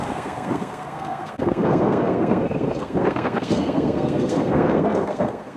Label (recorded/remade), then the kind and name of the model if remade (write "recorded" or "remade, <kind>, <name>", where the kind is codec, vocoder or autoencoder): remade, codec, SNAC